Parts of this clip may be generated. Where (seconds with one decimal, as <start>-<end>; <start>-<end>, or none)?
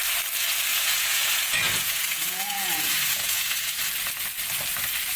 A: 0.7-3.8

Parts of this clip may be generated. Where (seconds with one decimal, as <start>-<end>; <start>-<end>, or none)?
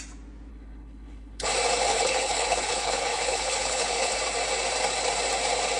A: 0.5-1.5; 1.9-4.2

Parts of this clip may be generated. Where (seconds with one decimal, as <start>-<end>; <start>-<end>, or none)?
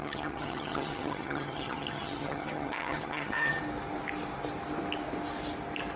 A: 0.0-3.6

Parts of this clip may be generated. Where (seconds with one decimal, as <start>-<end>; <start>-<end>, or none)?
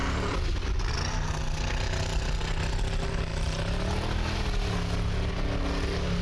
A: none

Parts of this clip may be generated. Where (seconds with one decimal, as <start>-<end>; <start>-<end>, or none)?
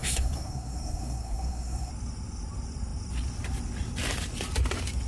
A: 0.0-1.9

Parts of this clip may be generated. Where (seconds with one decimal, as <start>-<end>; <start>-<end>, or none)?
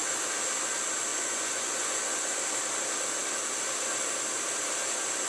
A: 1.1-2.4